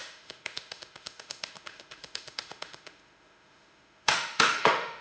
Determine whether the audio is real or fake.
fake